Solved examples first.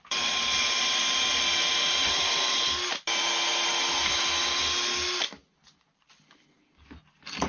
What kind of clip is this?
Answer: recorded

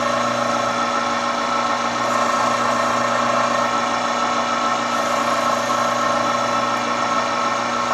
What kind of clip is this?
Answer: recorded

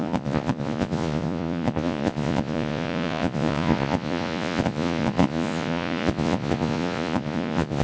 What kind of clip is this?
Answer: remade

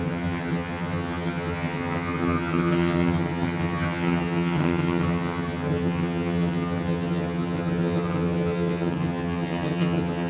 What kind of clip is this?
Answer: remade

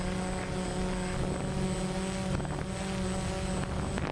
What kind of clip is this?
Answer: recorded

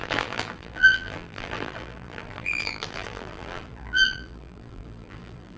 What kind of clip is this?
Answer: remade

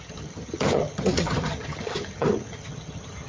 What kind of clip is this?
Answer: remade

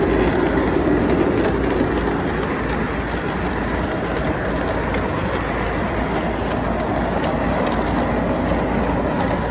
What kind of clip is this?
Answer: recorded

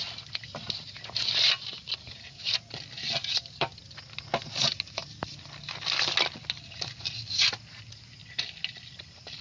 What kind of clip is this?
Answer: recorded